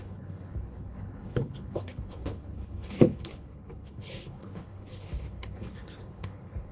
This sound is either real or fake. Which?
fake